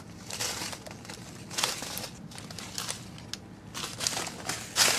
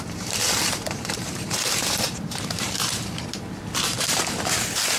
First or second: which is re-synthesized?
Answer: second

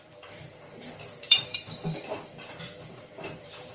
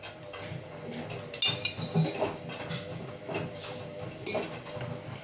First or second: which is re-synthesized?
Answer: first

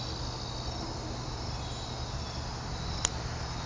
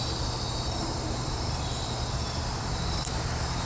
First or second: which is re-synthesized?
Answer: second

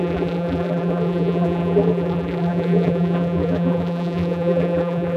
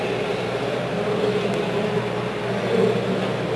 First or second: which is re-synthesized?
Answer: first